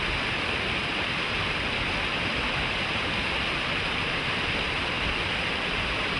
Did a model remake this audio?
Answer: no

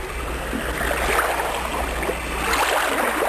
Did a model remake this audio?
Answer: no